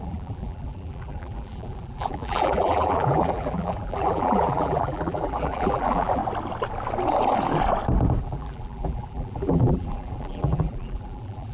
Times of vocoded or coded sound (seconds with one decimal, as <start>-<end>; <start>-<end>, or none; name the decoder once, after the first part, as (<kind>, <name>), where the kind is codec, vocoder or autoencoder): 0.0-6.2 (vocoder, BigVGAN v2); 8.2-11.5